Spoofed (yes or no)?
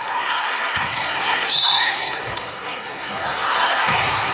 yes